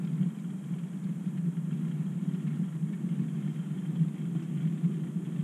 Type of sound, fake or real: real